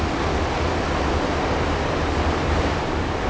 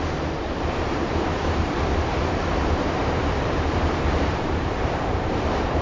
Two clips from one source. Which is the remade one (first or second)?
second